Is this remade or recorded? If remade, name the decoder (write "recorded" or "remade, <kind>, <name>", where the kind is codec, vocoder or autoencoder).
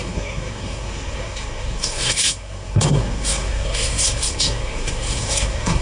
remade, codec, SNAC